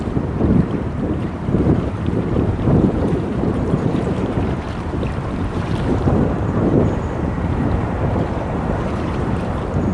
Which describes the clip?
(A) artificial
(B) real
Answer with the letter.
A